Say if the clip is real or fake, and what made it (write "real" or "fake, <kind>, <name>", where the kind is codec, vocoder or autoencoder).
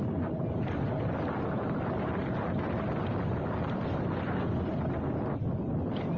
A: real